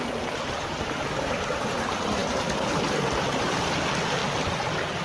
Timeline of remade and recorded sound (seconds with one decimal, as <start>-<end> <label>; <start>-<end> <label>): 0.0-5.0 recorded